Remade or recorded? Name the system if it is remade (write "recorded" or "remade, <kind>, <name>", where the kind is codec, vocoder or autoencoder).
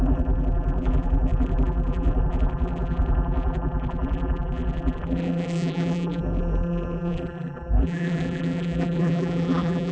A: remade, vocoder, BigVGAN v2